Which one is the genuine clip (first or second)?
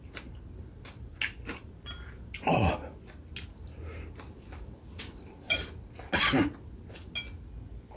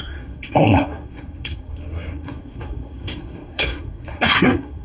first